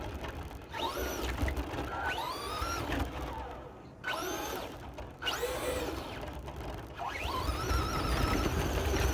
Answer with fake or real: real